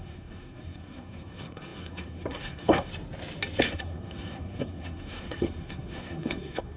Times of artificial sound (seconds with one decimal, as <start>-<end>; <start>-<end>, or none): 0.0-2.9; 3.6-6.8